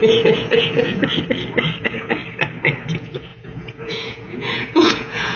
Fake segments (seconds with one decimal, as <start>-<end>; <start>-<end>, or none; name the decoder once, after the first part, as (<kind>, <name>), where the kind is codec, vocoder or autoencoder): 0.0-1.1 (vocoder, Vocos); 1.8-2.2; 2.9-5.4